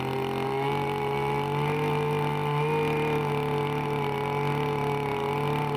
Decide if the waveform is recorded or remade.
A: recorded